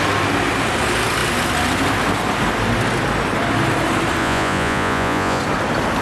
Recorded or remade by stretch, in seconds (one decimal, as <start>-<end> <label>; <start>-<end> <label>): 0.0-4.2 recorded; 4.2-5.4 remade; 5.4-6.0 recorded